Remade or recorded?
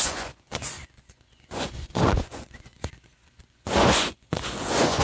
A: remade